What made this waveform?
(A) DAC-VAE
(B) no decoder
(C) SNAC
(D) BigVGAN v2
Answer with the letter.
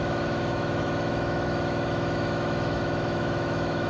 A